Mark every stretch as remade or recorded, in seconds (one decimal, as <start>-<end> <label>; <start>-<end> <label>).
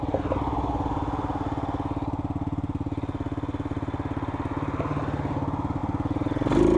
0.0-6.8 recorded